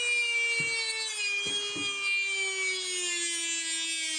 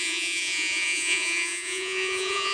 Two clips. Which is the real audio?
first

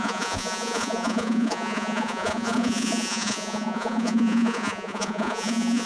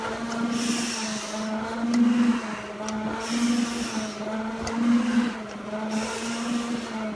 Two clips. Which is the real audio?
second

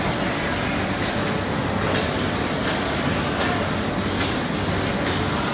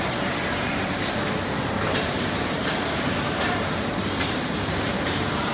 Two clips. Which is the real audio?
first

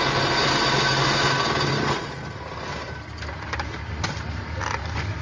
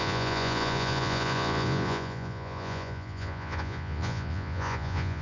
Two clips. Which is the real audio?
first